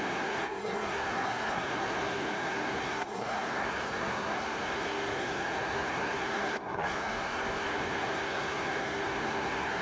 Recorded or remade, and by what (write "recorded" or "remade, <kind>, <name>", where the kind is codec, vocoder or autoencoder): remade, codec, SNAC